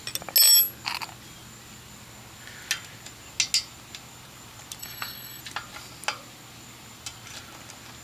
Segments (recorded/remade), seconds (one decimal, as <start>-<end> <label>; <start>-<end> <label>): 0.0-4.8 recorded; 4.8-5.4 remade; 5.4-8.0 recorded